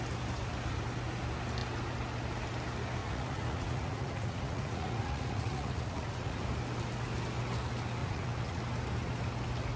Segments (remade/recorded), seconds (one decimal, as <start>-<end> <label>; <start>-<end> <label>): 0.0-3.0 recorded; 3.0-6.4 remade; 6.4-8.0 recorded; 8.0-8.6 remade; 8.6-9.8 recorded